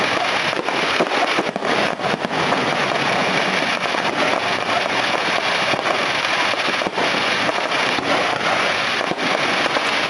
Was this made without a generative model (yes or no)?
no